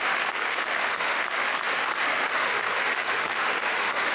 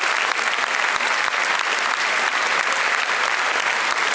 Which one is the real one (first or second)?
second